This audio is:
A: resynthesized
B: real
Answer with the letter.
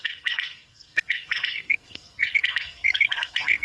A